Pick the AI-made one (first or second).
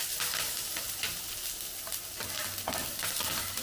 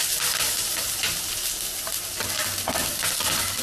first